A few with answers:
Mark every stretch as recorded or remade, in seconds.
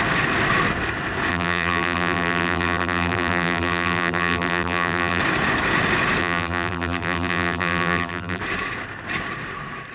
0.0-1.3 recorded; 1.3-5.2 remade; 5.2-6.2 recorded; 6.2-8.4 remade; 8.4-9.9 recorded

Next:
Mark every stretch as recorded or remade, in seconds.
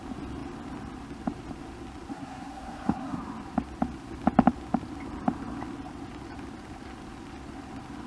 0.0-2.1 recorded; 2.1-3.2 remade; 3.2-8.1 recorded